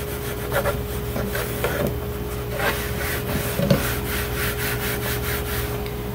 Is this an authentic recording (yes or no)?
yes